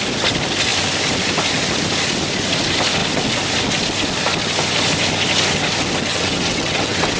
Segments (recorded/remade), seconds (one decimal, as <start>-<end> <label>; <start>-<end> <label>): 0.0-6.1 recorded; 6.1-7.2 remade